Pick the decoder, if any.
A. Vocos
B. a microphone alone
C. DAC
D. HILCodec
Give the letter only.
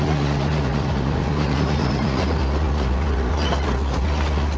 A